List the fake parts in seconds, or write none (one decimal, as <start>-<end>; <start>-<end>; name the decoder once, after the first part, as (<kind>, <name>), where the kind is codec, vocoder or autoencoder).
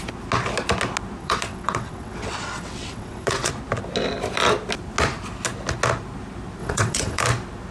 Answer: 1.2-3.5 (vocoder, WaveNeXt); 6.6-7.2